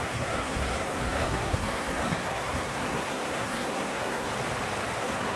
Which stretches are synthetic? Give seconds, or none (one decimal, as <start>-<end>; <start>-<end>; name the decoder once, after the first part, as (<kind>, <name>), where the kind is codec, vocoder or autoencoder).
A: 0.0-4.3 (codec, SNAC); 5.0-5.4